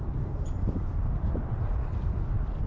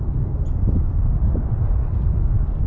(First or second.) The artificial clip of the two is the first